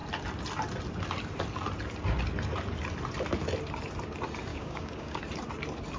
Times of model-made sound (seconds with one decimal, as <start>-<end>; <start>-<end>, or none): 4.5-5.2